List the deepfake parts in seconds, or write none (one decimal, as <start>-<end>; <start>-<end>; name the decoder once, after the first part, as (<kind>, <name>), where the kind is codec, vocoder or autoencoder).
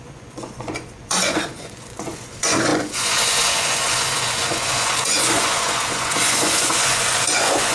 0.0-7.7 (vocoder, Vocos)